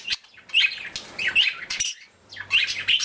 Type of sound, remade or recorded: recorded